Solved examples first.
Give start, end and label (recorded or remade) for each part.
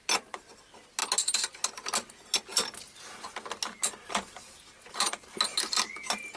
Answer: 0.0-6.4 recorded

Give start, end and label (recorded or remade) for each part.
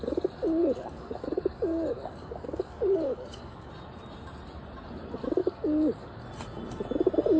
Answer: 0.0-0.6 recorded; 0.6-3.7 remade; 3.7-5.4 recorded; 5.4-6.2 remade; 6.2-7.4 recorded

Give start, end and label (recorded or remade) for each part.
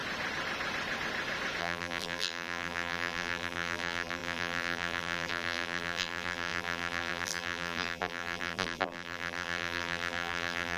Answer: 0.0-1.6 recorded; 1.6-10.8 remade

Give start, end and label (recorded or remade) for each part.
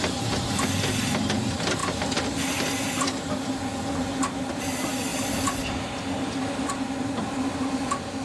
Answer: 0.0-8.2 recorded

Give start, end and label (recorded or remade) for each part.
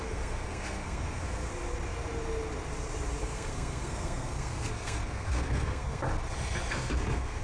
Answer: 0.0-1.5 remade; 1.5-3.2 recorded; 3.2-6.0 remade; 6.0-6.7 recorded; 6.7-7.4 remade